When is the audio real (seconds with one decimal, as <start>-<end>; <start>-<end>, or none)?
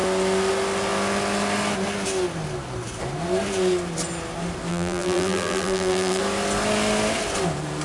0.0-4.7; 6.2-7.8